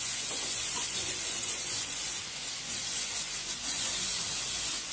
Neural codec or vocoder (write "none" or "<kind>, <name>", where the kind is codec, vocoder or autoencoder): vocoder, Vocos